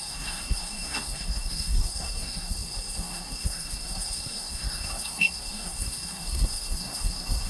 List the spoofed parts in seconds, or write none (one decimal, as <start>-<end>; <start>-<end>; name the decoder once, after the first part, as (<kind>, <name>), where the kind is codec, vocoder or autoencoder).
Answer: 0.0-7.5 (codec, SNAC)